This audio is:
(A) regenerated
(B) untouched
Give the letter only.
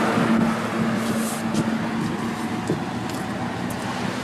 B